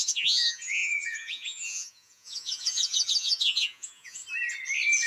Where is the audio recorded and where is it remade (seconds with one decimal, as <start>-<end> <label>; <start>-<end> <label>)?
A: 0.0-4.2 remade; 4.2-5.1 recorded

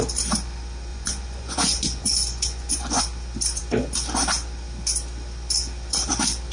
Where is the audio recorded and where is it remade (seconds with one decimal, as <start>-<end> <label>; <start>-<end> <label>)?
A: 0.0-0.9 recorded; 0.9-3.0 remade; 3.0-6.5 recorded